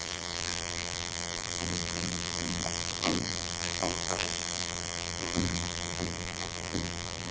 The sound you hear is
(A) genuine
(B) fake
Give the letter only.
B